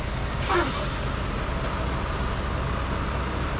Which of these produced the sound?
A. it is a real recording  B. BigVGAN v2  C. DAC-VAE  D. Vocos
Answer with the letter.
A